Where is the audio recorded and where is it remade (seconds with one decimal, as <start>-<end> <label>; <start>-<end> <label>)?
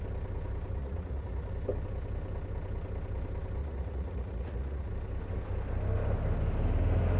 0.0-0.8 recorded; 0.8-1.5 remade; 1.5-3.6 recorded; 3.6-4.9 remade; 4.9-7.2 recorded